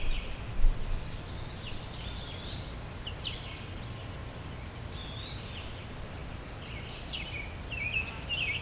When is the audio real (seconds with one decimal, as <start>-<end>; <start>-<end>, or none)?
0.0-8.6